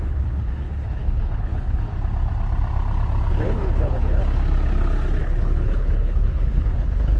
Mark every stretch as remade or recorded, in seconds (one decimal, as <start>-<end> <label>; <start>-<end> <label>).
0.0-1.9 remade; 1.9-3.3 recorded; 3.3-4.2 remade; 4.2-5.2 recorded; 5.2-7.2 remade